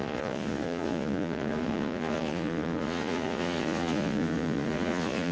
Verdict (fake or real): fake